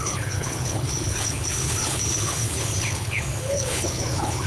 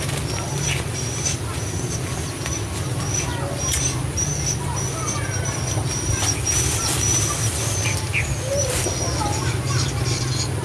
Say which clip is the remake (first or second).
first